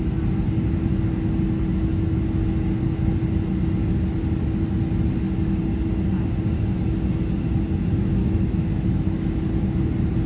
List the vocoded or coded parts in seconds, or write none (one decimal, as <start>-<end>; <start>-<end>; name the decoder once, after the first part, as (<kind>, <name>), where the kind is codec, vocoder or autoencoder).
8.2-9.4 (autoencoder, DAC-VAE)